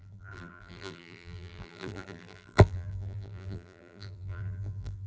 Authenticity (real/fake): fake